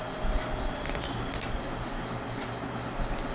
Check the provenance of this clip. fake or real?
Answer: real